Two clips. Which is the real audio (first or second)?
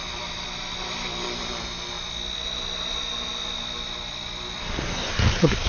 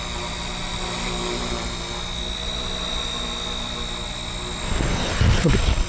second